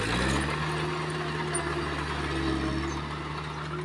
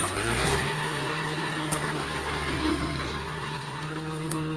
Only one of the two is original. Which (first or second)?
first